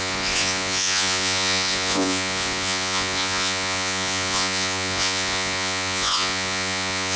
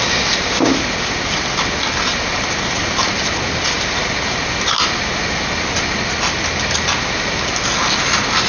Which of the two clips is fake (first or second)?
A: first